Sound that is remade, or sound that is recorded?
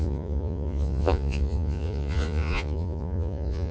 remade